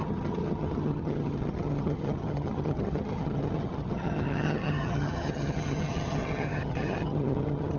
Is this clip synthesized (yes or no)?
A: yes